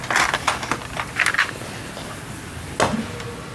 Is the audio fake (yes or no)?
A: no